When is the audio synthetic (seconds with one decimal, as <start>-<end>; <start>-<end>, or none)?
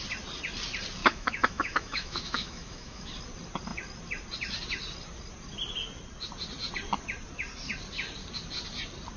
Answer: 1.0-3.1